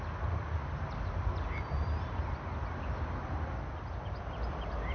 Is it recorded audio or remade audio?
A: recorded